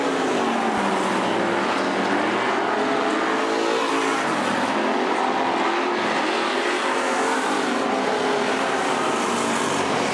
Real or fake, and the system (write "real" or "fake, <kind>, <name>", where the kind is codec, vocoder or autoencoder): real